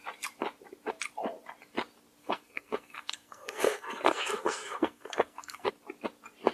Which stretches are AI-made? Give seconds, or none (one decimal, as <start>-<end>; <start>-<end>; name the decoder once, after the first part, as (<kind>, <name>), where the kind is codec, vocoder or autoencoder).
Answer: 2.2-5.7 (codec, SNAC)